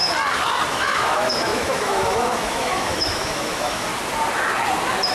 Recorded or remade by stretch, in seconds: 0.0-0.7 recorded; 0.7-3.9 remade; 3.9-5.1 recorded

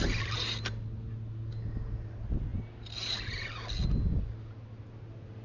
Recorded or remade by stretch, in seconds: 0.0-5.4 recorded

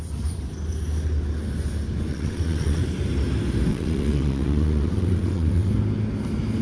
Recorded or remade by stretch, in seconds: 0.0-2.1 recorded; 2.1-2.8 remade; 2.8-3.7 recorded; 3.7-5.7 remade; 5.7-6.6 recorded

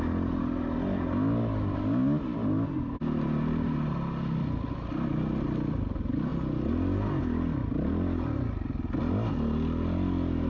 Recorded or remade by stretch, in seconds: 0.0-10.5 recorded